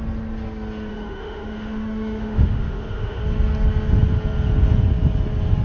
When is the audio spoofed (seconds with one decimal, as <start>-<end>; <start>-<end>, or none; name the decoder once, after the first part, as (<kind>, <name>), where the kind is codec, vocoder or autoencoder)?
0.9-3.2 (autoencoder, DAC-VAE)